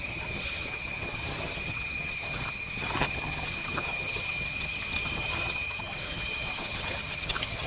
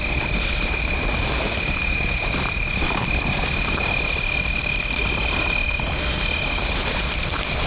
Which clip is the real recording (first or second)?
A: second